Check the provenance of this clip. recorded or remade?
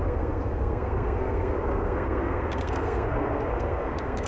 remade